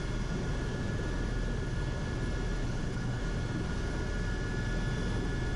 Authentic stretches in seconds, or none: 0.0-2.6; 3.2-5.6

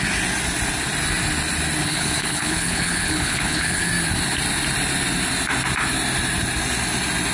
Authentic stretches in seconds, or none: 0.0-1.8; 3.9-7.3